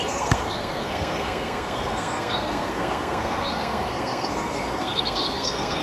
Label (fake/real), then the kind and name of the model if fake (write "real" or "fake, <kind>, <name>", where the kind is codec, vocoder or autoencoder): fake, codec, SNAC